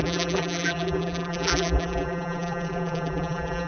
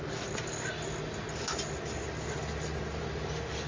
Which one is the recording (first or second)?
second